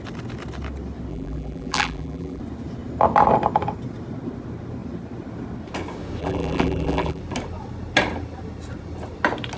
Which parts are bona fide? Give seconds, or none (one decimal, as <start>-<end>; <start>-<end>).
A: 0.0-1.1; 2.4-6.2; 7.2-9.6